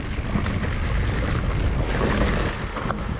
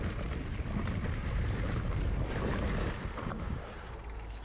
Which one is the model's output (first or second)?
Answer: second